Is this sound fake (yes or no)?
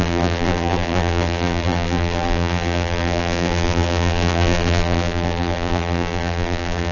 yes